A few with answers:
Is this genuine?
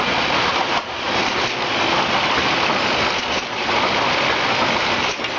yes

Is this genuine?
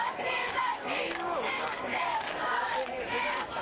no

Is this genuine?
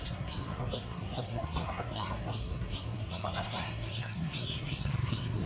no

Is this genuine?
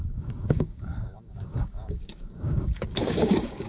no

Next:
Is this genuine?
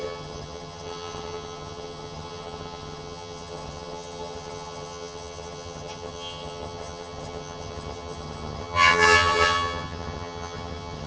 no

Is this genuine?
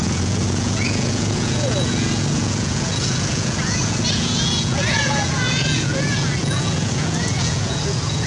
no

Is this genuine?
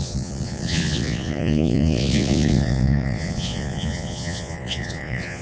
no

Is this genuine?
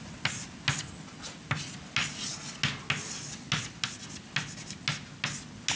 yes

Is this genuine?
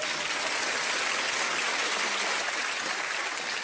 yes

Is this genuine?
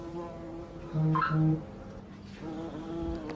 yes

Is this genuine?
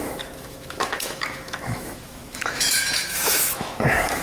no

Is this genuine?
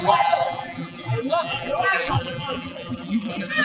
no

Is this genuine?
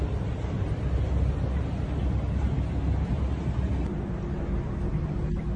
yes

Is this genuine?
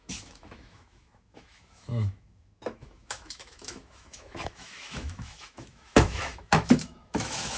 no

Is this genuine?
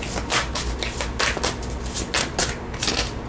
yes